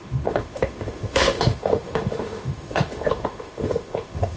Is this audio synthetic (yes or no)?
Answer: yes